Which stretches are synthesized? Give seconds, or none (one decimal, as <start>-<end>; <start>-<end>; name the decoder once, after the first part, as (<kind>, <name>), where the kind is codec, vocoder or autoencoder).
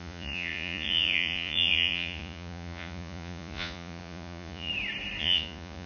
0.0-4.7 (vocoder, Vocos); 5.2-5.9